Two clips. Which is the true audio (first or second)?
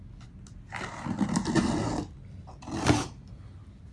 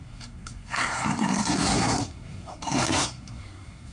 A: first